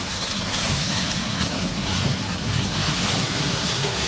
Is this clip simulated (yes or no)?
yes